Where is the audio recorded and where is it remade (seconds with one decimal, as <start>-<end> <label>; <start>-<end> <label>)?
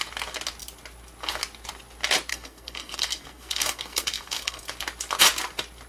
0.0-2.3 recorded; 2.3-4.6 remade; 4.6-5.9 recorded